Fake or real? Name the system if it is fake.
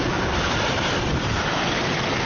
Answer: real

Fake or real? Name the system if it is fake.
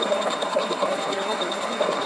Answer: fake, codec, SNAC